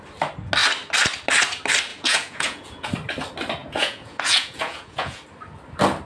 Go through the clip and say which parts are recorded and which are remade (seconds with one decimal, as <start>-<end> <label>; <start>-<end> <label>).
0.0-1.9 recorded; 1.9-2.9 remade; 2.9-3.6 recorded; 3.6-5.2 remade; 5.2-6.0 recorded